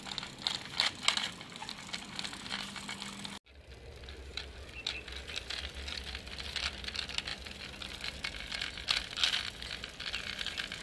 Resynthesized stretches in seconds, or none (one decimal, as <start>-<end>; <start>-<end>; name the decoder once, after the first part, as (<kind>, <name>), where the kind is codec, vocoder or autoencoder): none

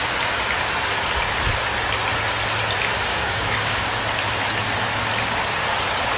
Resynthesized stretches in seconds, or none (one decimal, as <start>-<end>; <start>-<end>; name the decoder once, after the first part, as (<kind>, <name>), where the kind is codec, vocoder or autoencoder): 3.1-4.0 (codec, DAC)

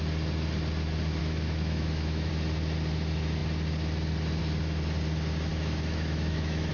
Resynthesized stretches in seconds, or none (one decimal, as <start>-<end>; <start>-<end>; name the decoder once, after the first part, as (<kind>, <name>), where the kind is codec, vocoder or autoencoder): 1.2-2.3 (autoencoder, DAC-VAE); 5.5-6.7